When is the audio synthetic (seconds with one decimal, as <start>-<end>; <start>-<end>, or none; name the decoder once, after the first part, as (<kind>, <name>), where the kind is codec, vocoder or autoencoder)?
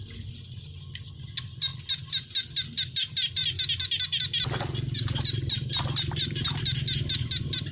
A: none